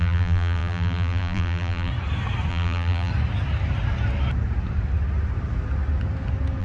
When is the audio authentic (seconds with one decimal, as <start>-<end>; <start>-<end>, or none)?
1.9-2.5; 3.1-6.6